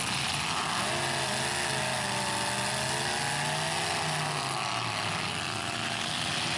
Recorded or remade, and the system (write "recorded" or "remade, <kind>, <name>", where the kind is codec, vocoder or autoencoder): recorded